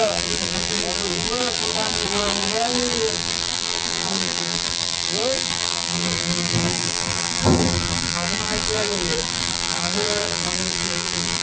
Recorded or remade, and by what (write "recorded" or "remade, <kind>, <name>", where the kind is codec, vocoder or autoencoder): remade, vocoder, BigVGAN v2